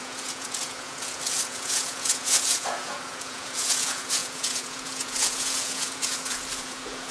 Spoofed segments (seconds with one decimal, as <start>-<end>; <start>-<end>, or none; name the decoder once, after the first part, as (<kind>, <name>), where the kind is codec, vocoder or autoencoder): 0.0-7.1 (vocoder, Vocos)